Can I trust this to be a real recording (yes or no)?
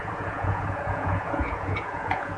no